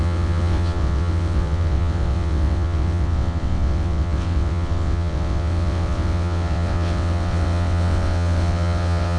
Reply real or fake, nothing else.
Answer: fake